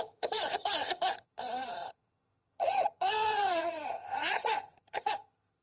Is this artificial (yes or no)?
yes